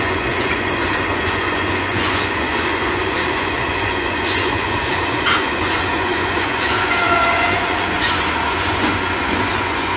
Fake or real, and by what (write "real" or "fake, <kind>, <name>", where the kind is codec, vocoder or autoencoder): fake, vocoder, Vocos